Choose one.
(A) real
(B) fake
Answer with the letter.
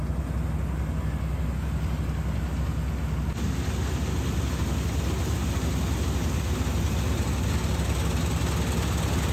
A